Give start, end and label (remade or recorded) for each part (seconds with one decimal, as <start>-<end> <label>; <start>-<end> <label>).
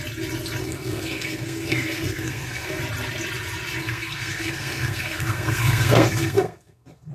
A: 0.0-0.6 recorded; 0.6-2.8 remade; 2.8-3.8 recorded; 3.8-7.1 remade